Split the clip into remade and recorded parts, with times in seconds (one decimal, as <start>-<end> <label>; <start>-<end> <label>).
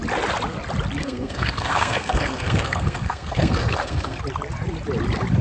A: 0.0-1.0 recorded; 1.0-4.2 remade; 4.2-5.4 recorded